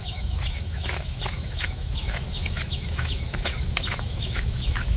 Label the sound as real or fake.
fake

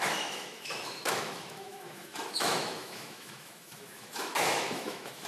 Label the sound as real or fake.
fake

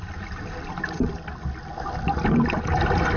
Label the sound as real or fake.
real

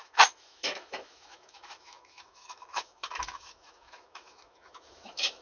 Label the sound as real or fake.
fake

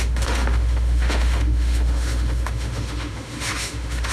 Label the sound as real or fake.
fake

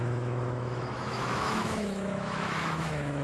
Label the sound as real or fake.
fake